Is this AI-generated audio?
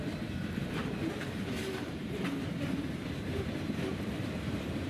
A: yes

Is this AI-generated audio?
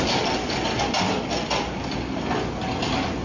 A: no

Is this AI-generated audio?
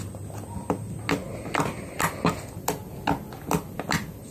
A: no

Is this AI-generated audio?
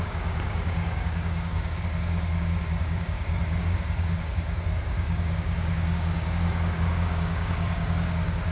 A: yes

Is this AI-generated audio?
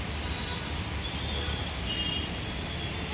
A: no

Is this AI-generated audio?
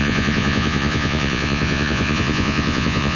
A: yes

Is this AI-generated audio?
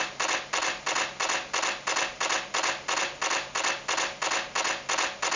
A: no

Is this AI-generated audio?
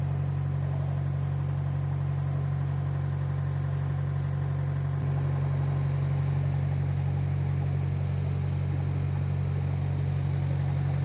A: no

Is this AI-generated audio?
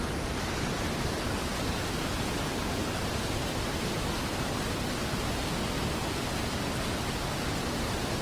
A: no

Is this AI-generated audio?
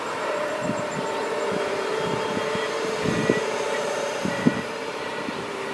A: yes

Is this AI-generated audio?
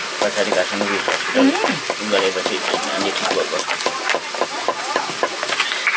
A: no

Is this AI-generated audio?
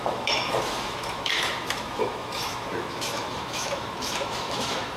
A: yes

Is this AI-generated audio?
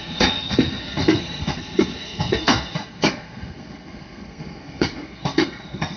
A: yes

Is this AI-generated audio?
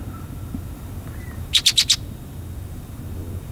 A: no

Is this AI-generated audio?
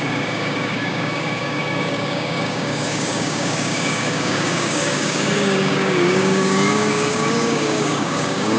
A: yes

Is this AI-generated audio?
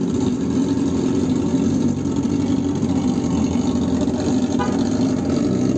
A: no